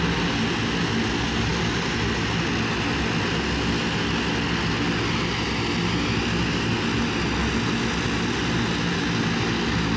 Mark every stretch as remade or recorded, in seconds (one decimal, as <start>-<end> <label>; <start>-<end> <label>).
0.0-10.0 recorded

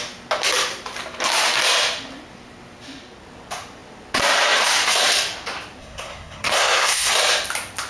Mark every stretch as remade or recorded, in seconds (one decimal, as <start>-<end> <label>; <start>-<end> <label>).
0.0-5.8 recorded; 5.8-7.1 remade; 7.1-7.9 recorded

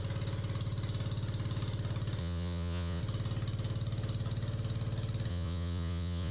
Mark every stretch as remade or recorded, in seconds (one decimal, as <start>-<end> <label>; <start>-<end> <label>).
0.0-2.2 recorded; 2.2-3.0 remade; 3.0-5.3 recorded; 5.3-6.3 remade

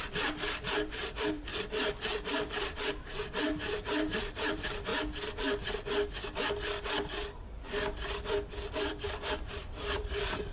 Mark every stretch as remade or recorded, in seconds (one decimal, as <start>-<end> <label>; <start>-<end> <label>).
0.0-1.5 remade; 1.5-2.4 recorded; 2.4-4.9 remade; 4.9-8.7 recorded; 8.7-10.5 remade